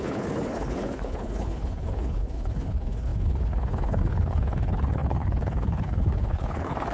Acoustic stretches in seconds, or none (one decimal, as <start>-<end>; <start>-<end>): none